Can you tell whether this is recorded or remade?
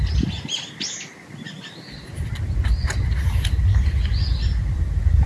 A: recorded